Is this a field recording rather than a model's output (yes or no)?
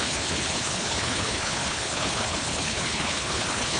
no